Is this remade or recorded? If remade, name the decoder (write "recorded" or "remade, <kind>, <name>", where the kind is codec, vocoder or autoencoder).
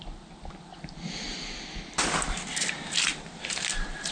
recorded